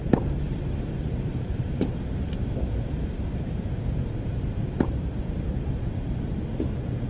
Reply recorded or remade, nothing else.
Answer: remade